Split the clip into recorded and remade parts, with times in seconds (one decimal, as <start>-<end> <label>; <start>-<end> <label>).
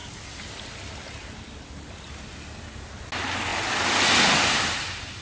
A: 0.0-5.2 recorded